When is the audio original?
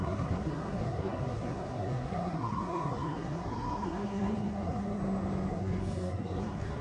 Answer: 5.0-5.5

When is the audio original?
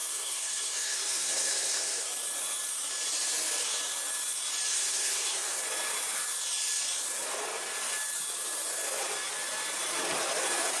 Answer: 2.1-4.7; 5.6-10.8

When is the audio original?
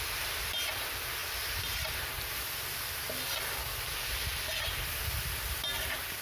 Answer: 0.0-6.2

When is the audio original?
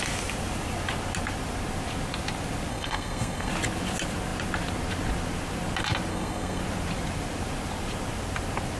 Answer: 0.0-2.7; 3.5-6.1; 6.6-8.8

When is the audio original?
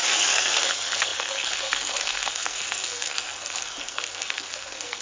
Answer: none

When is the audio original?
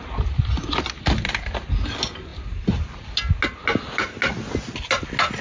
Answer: 0.0-5.4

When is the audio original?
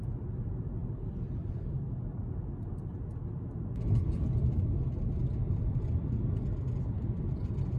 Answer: 0.0-7.8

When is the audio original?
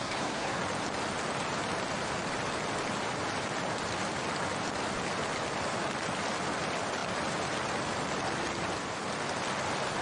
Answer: 0.6-10.0